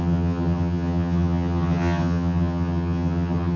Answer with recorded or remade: remade